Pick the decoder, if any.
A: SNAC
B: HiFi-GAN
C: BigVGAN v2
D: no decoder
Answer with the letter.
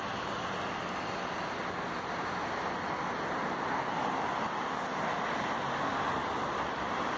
D